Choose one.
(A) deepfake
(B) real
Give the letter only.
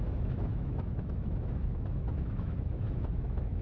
A